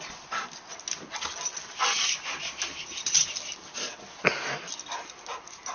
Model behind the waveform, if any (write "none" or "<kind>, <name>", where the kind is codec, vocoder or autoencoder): none